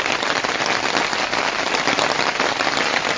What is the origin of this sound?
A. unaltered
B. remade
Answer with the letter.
A